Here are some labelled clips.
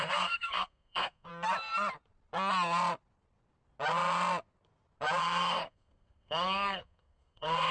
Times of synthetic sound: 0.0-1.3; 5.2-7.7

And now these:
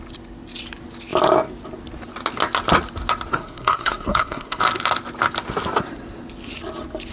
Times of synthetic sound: 3.3-4.6

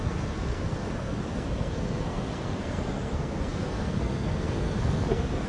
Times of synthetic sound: 0.0-5.5

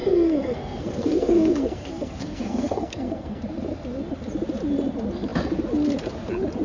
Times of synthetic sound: 0.0-3.4

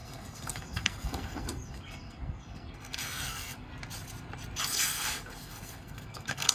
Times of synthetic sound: 0.0-3.7; 4.6-6.5